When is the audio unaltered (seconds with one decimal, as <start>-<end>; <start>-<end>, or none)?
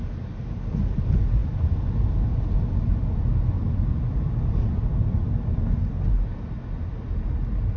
0.0-7.8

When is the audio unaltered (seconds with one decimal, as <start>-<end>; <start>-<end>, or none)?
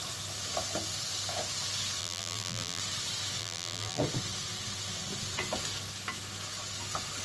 0.0-2.0; 2.8-3.4; 4.0-7.2